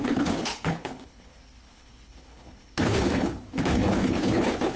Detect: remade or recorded remade